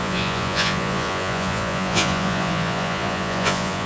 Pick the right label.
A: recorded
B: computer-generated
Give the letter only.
B